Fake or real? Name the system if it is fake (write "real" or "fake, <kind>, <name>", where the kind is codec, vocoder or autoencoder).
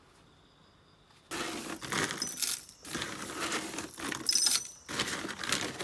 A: real